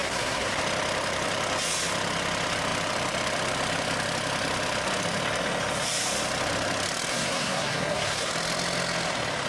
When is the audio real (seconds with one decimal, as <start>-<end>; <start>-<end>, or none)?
0.6-7.1; 8.3-9.5